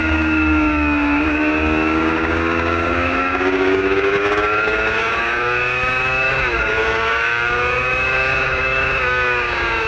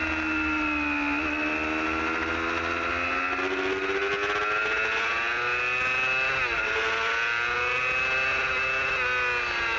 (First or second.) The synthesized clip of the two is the first